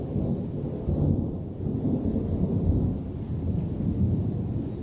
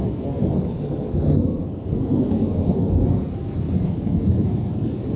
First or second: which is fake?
second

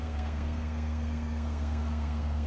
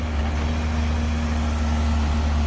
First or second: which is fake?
first